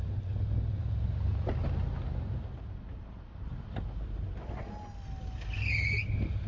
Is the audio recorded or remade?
recorded